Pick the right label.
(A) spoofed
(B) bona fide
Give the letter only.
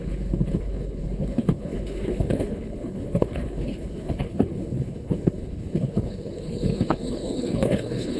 A